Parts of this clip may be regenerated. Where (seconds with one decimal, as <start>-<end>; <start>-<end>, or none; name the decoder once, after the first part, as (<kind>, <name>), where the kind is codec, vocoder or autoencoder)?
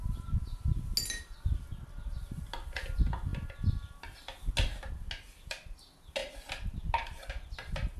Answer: none